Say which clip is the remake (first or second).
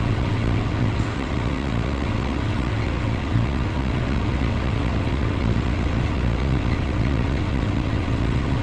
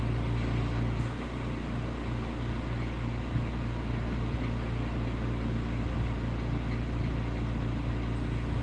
first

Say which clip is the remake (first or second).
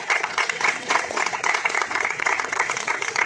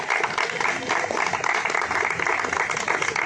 first